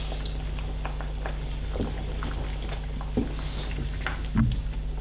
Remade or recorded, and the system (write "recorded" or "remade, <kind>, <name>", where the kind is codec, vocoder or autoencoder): recorded